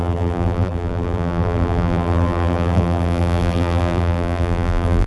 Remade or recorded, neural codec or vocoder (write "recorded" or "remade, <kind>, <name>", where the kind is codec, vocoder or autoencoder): remade, vocoder, BigVGAN v2